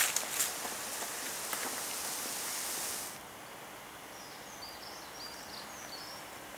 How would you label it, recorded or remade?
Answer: recorded